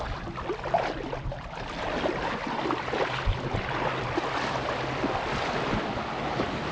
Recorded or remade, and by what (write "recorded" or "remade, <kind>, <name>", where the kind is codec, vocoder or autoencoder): recorded